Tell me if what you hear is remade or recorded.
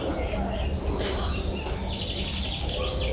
recorded